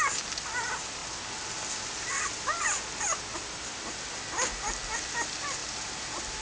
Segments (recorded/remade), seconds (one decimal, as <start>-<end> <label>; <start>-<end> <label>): 0.0-6.4 recorded